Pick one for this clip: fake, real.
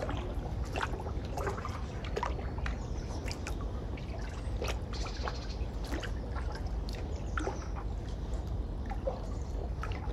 real